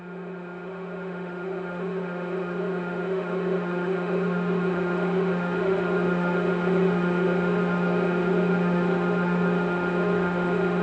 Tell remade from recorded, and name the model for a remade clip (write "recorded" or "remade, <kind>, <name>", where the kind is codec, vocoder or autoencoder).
remade, autoencoder, DAC-VAE